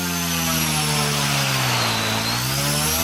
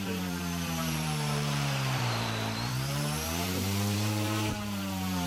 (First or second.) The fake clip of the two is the second